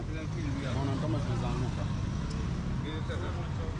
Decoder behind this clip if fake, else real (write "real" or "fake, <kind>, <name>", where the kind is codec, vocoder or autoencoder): real